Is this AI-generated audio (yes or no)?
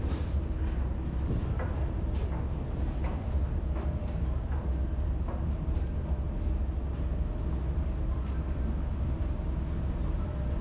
no